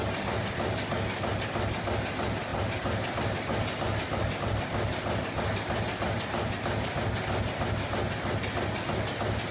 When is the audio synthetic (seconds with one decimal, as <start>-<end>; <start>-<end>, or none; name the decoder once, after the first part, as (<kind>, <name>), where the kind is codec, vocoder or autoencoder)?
none